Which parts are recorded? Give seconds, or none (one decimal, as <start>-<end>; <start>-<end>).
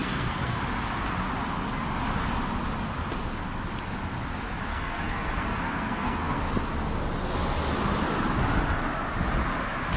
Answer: 0.6-4.7; 6.4-10.0